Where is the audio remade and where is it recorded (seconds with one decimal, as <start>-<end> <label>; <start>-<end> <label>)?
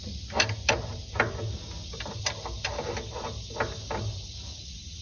0.0-5.0 recorded